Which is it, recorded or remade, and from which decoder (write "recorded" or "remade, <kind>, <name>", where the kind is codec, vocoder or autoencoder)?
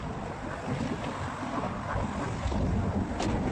recorded